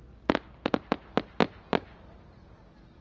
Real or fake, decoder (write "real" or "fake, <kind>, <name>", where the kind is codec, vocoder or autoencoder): real